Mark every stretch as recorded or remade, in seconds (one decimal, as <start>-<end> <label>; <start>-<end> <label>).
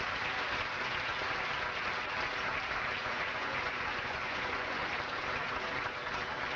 0.0-3.0 recorded; 3.0-4.9 remade; 4.9-6.6 recorded